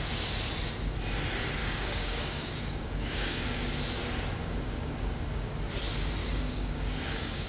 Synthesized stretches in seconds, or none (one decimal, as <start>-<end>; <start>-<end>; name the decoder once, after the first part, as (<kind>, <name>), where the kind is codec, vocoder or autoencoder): 1.6-3.4 (codec, DAC); 4.4-5.5; 6.2-7.5